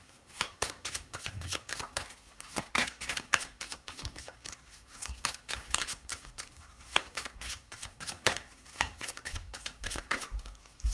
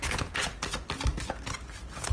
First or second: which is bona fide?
second